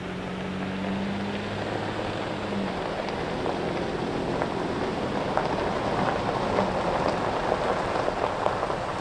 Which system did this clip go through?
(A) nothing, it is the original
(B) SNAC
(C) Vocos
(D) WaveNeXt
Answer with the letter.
A